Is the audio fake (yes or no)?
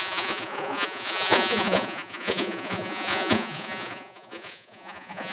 yes